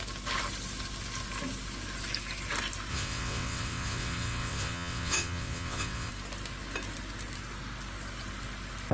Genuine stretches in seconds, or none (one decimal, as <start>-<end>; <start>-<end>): 0.0-2.9; 6.1-8.9